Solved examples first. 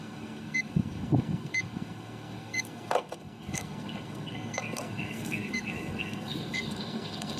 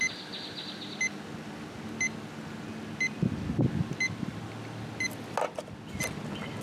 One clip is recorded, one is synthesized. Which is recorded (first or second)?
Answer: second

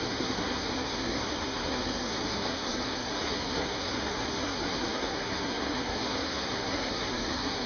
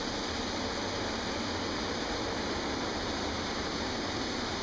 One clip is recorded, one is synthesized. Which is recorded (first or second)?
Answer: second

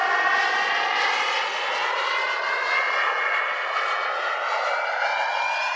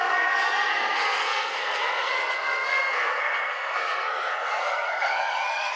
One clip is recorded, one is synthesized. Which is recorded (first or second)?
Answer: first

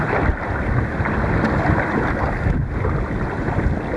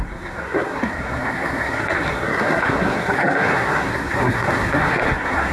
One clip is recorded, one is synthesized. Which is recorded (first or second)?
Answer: first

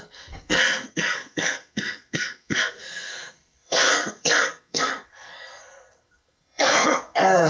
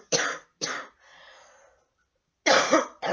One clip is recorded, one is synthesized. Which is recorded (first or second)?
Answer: second